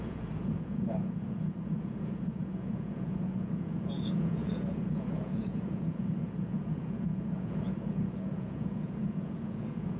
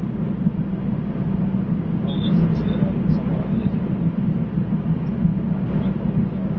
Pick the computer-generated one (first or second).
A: first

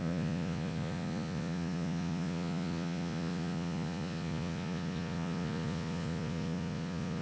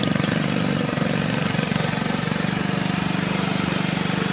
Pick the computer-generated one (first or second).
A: first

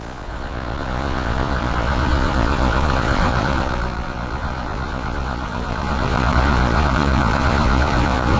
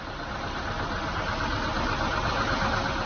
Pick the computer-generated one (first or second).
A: first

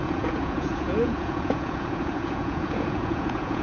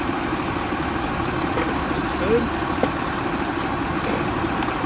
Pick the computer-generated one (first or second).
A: first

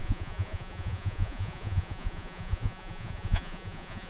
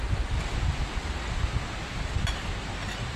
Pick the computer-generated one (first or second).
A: first